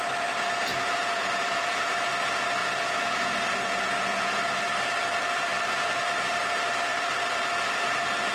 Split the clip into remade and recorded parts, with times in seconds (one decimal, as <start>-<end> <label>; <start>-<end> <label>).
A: 0.0-0.7 recorded; 0.7-1.9 remade; 1.9-2.6 recorded; 2.6-4.6 remade; 4.6-8.3 recorded